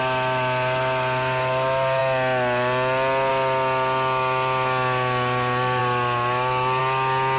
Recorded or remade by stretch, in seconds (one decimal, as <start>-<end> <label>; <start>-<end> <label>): 0.0-7.4 recorded